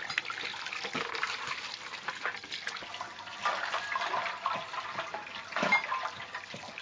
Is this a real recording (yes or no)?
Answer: yes